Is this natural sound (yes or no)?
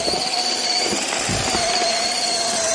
yes